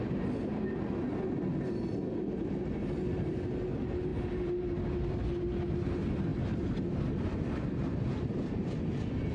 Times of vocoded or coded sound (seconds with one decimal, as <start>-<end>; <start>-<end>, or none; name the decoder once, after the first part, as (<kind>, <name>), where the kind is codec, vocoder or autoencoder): none